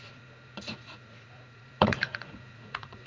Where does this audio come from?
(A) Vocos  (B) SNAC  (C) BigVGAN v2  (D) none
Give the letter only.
A